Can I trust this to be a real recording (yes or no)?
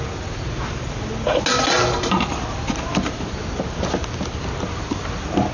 yes